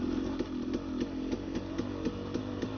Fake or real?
real